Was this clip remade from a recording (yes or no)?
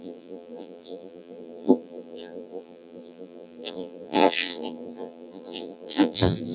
yes